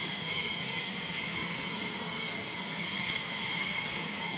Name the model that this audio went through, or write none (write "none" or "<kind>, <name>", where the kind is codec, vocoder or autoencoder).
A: codec, SNAC